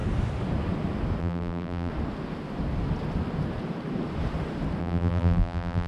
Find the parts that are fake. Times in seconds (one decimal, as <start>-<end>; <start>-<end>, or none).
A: 1.2-1.9; 4.8-5.9